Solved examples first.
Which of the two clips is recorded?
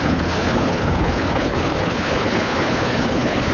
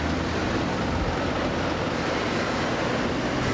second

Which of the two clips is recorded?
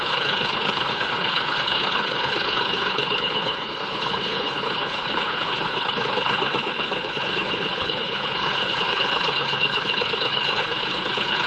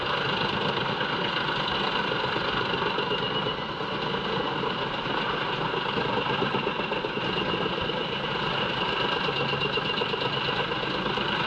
second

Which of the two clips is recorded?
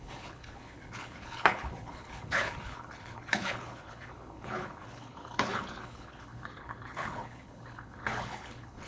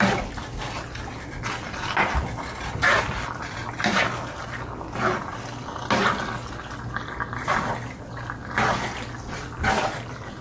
second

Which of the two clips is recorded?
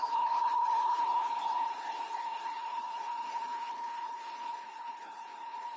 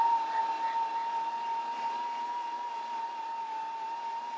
second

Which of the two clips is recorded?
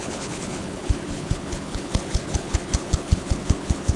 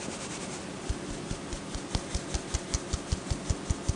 second